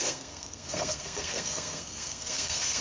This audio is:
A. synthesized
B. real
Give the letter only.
A